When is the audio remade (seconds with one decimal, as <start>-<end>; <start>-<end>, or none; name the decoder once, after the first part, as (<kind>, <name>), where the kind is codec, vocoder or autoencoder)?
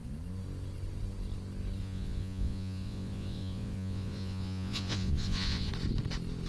1.8-5.7 (vocoder, Vocos)